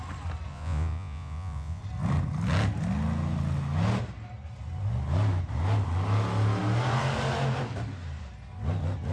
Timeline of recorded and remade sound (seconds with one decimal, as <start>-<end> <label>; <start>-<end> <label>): 0.0-0.5 recorded; 0.5-1.8 remade; 1.8-9.1 recorded